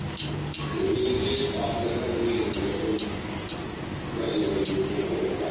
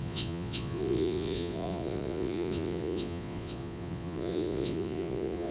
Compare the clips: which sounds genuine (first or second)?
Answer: first